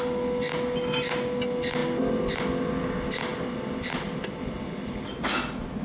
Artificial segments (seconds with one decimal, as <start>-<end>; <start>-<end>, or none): none